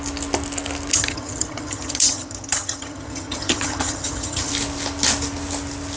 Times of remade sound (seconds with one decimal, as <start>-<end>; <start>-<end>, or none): 0.9-4.5